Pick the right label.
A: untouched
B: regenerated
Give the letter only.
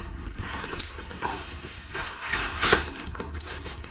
B